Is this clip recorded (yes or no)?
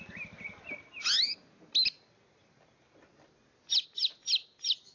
yes